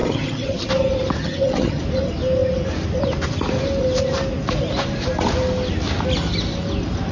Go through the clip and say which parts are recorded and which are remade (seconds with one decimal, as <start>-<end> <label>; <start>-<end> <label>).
0.0-0.7 remade; 0.7-1.2 recorded; 1.2-1.8 remade; 1.8-7.1 recorded